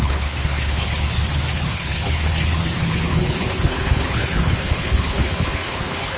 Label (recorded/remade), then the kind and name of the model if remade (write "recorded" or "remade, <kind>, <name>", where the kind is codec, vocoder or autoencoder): remade, codec, HILCodec